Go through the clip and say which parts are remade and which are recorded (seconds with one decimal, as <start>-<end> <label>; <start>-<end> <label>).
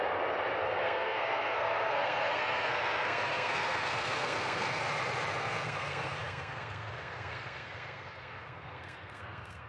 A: 0.0-0.6 recorded; 0.6-4.8 remade; 4.8-5.3 recorded; 5.3-9.7 remade